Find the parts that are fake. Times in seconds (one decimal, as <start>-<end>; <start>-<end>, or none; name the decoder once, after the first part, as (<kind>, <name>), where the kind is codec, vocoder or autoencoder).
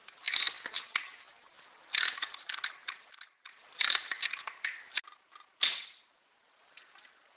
none